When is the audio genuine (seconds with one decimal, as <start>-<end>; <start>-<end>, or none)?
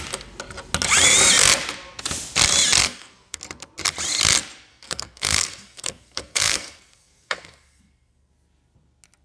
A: 0.0-2.8; 3.4-4.7; 8.3-9.2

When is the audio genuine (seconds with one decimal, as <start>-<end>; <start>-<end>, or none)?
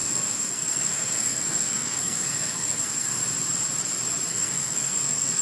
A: 3.2-4.3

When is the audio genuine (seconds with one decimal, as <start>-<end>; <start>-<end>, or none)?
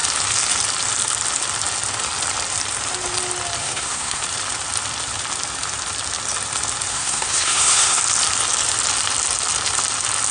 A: 0.0-3.6; 4.2-6.9; 8.0-10.3